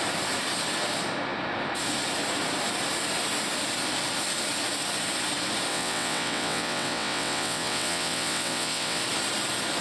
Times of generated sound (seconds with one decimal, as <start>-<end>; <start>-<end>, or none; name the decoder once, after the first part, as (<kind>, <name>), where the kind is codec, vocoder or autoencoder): 5.7-9.0 (vocoder, WaveNeXt)